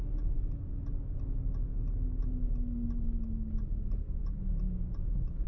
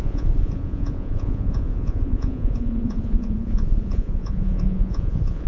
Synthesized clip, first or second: second